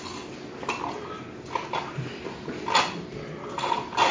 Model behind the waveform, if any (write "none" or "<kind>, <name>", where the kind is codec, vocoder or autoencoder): none